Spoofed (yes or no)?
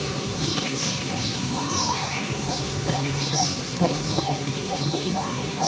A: yes